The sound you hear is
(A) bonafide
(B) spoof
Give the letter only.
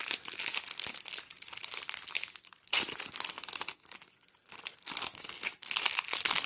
A